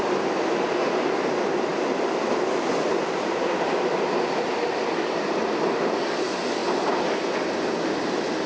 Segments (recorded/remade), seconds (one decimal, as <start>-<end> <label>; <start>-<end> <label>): 0.0-1.7 recorded; 1.7-5.4 remade; 5.4-8.5 recorded